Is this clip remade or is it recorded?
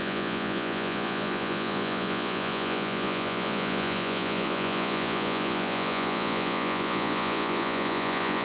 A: remade